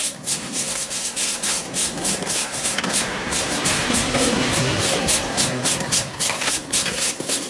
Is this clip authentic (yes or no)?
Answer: no